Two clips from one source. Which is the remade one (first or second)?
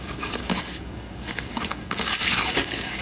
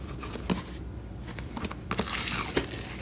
first